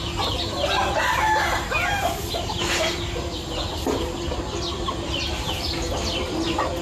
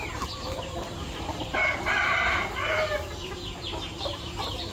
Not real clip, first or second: second